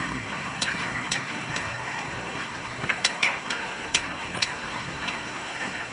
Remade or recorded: remade